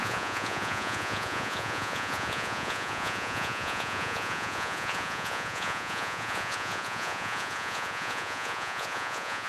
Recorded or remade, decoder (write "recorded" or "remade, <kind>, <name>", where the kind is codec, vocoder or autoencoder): remade, vocoder, Vocos